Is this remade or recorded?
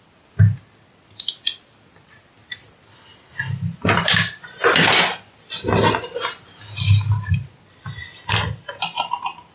recorded